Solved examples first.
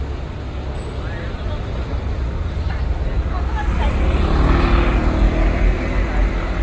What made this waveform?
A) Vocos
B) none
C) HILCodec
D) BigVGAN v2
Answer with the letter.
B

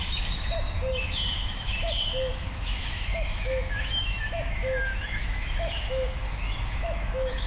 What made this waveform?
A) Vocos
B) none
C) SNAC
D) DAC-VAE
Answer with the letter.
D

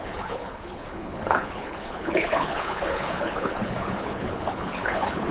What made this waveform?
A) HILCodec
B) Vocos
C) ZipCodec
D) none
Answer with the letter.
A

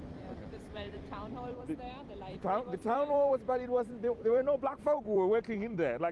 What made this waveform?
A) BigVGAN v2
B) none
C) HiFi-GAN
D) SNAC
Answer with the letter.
A